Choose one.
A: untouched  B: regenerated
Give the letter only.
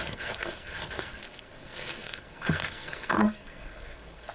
B